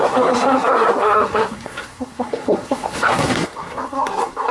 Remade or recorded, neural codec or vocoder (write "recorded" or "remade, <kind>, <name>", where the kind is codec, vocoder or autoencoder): remade, codec, SNAC